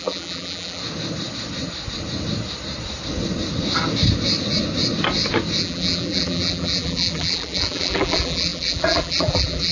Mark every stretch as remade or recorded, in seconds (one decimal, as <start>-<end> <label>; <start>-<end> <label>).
0.0-0.8 remade; 0.8-5.6 recorded; 5.6-9.7 remade